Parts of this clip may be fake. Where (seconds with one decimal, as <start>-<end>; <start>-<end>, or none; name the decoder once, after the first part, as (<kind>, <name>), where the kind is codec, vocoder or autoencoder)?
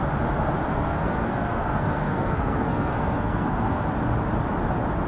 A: 0.7-3.8 (codec, SNAC)